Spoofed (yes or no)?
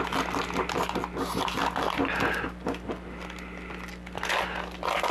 no